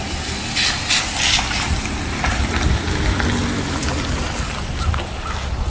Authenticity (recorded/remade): recorded